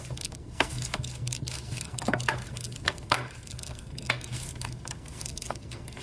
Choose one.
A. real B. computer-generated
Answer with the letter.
B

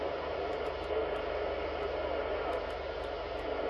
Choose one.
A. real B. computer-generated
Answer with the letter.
A